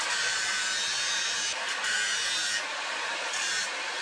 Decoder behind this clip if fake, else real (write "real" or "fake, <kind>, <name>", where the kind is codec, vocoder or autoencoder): fake, vocoder, BigVGAN v2